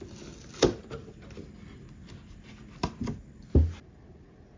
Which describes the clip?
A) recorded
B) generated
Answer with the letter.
A